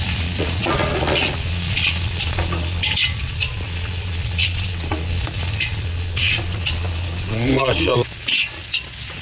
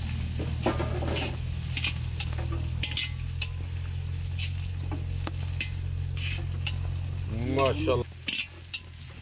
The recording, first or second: second